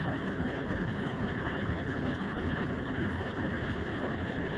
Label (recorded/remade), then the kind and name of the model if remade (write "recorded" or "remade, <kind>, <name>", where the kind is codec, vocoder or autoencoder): remade, codec, HILCodec